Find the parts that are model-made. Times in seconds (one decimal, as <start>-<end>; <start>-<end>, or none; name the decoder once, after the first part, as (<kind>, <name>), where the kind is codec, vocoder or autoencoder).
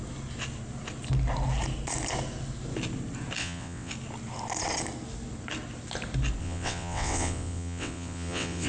3.4-3.9 (vocoder, WaveNeXt); 6.4-8.7